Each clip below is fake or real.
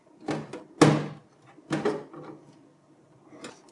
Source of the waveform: real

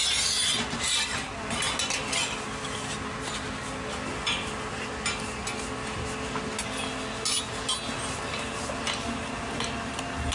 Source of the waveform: real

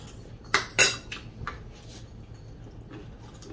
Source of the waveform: real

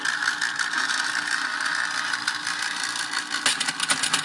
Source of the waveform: real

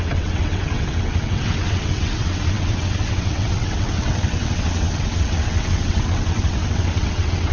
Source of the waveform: fake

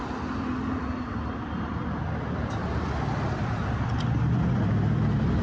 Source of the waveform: real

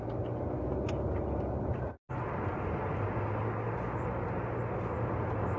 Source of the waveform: real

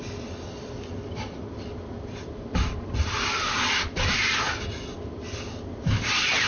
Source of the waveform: real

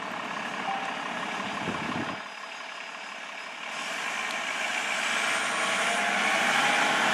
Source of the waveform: real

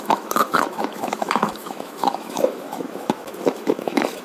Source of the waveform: fake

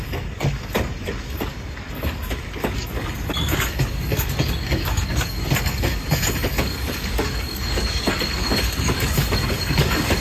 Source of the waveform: fake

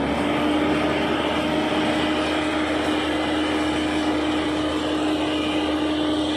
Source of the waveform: real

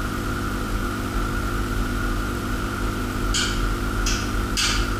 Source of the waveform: real